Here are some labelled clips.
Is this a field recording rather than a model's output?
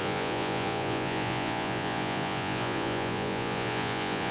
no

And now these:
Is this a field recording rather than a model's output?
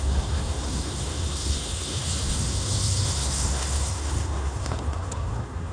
no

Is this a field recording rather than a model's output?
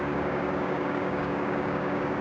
no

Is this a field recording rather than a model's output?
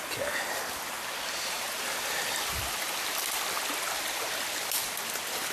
yes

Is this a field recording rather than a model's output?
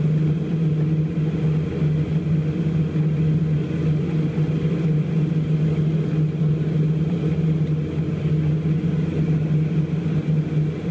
yes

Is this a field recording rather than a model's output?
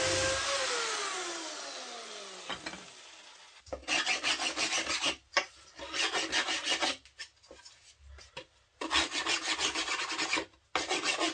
yes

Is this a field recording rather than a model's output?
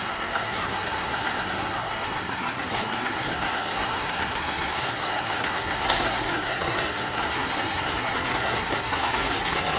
no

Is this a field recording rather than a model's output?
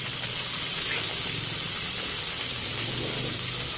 yes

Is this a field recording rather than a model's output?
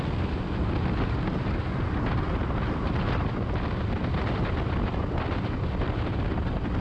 yes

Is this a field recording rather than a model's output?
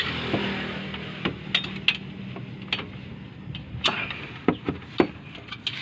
yes